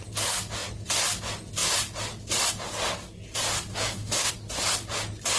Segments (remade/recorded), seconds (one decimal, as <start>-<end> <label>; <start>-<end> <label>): 0.0-3.7 recorded; 3.7-4.3 remade; 4.3-5.4 recorded